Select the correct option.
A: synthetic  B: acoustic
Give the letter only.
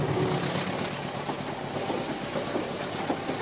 B